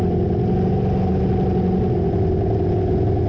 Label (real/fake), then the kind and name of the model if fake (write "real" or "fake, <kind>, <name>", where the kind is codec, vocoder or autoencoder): real